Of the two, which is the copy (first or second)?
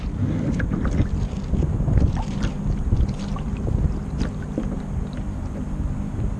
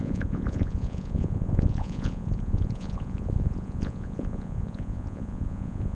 second